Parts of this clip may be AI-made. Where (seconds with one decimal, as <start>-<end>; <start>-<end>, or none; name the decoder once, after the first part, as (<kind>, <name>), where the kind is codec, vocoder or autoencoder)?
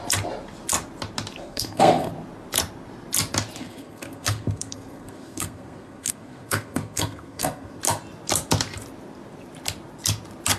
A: 1.4-2.1 (codec, SNAC); 3.6-7.8